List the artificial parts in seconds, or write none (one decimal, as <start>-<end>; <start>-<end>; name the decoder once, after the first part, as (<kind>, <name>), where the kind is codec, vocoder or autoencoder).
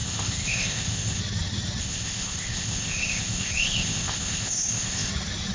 0.0-1.2 (codec, ZipCodec); 1.8-5.1